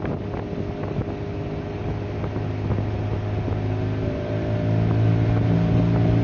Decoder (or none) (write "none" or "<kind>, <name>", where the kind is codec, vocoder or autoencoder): none